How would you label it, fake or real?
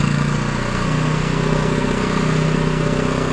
fake